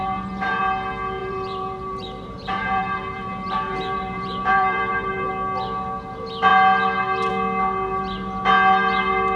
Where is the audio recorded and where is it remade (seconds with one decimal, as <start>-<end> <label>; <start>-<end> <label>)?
0.0-0.6 remade; 0.6-1.2 recorded; 1.2-5.3 remade; 5.3-9.4 recorded